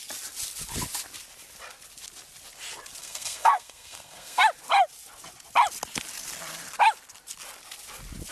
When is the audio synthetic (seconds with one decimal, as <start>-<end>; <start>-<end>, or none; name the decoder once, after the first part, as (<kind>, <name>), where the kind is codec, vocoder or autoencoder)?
3.0-4.4 (codec, SNAC)